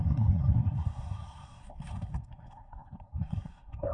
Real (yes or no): no